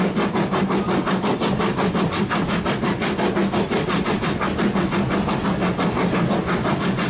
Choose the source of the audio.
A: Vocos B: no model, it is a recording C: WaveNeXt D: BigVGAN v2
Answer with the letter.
B